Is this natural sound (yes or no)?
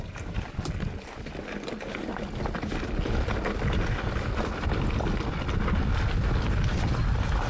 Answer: yes